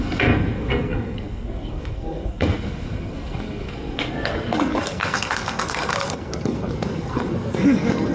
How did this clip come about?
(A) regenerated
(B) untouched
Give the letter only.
A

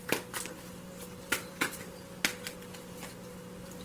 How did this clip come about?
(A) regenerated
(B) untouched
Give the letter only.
B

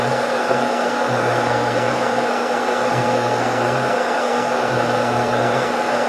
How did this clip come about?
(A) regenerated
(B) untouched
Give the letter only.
A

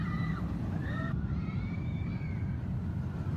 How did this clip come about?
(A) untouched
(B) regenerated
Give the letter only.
A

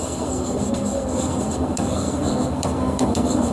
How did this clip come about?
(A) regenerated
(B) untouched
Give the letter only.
A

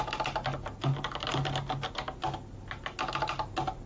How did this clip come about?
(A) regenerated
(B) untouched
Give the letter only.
B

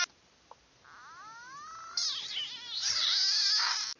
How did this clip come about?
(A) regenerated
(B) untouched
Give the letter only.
B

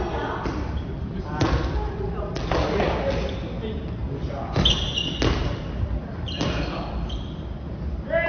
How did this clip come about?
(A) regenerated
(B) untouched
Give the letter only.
B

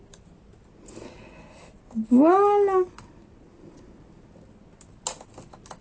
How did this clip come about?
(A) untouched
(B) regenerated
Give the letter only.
A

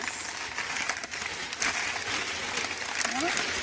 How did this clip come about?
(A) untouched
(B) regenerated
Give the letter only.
A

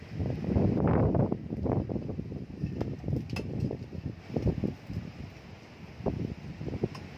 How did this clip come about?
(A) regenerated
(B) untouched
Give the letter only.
B